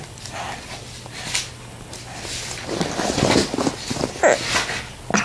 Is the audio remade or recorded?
recorded